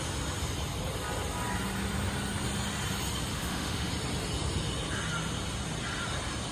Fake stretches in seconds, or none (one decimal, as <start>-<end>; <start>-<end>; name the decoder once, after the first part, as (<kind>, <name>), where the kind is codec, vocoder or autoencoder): 3.3-3.9 (autoencoder, DAC-VAE)